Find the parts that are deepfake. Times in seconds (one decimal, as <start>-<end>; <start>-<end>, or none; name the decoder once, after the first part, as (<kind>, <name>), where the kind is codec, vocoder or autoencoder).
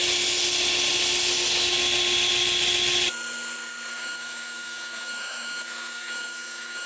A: 3.9-6.9 (autoencoder, DAC-VAE)